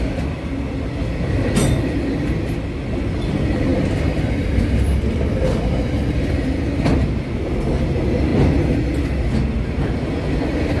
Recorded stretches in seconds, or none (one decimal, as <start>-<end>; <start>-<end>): 0.0-10.8